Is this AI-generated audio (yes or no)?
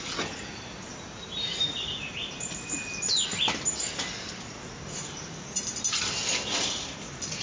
no